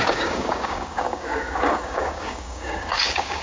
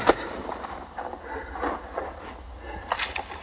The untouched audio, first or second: second